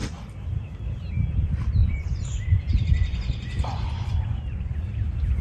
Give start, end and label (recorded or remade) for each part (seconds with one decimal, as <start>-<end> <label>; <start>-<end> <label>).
0.0-1.8 recorded; 1.8-4.9 remade; 4.9-5.4 recorded